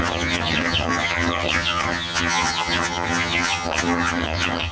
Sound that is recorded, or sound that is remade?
remade